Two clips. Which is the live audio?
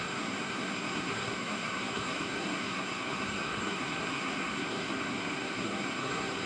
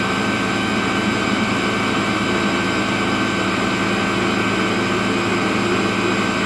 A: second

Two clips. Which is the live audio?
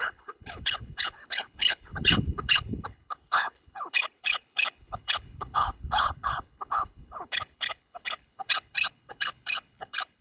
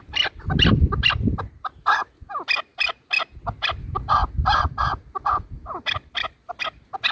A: second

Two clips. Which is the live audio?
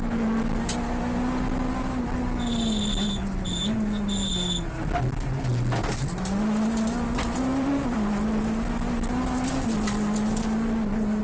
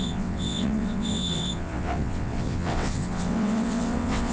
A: first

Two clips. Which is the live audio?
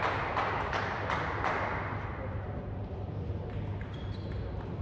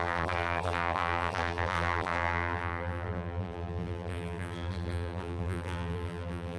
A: first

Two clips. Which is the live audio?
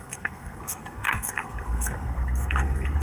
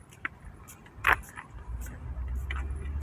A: second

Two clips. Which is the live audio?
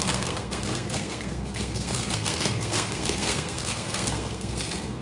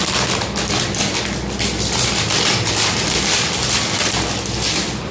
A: second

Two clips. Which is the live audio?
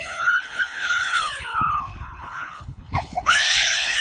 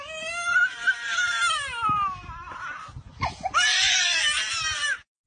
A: second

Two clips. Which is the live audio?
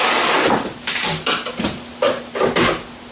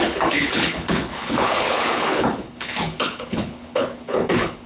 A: first